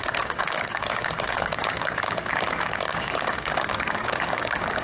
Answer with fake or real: fake